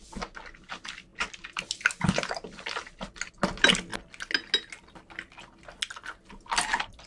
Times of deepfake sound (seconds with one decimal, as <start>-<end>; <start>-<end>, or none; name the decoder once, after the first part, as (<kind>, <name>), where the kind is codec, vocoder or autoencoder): none